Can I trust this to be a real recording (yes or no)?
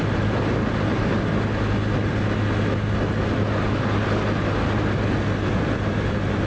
yes